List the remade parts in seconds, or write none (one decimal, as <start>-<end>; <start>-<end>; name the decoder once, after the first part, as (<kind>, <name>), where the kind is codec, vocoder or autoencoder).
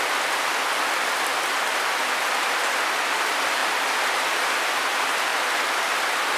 5.3-5.9 (vocoder, BigVGAN v2)